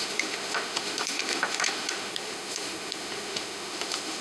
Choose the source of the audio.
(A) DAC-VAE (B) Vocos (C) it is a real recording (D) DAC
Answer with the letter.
A